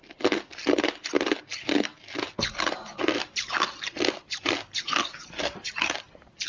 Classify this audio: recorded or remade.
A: recorded